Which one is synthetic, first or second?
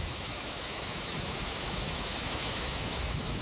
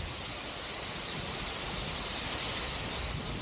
first